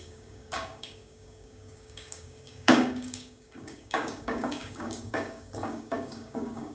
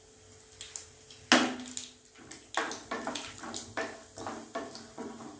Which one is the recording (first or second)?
second